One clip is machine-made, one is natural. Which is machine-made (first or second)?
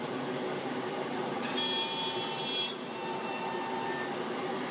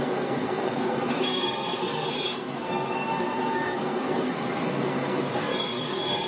second